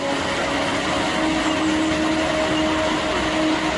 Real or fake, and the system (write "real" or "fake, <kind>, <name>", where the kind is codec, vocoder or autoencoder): real